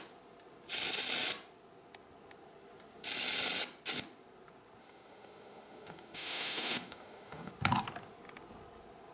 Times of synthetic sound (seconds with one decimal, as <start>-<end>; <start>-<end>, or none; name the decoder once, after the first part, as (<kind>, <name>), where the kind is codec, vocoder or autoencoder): 4.8-7.5 (autoencoder, DAC-VAE)